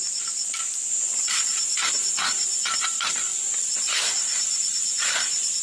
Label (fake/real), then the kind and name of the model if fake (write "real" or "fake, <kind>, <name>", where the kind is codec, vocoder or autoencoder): fake, vocoder, BigVGAN v2